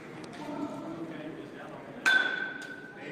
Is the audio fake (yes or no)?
no